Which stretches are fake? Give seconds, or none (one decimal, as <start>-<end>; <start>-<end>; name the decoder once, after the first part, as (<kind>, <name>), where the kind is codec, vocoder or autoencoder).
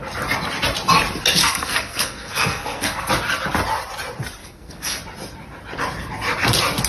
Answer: 1.4-3.1 (codec, SNAC); 4.4-5.0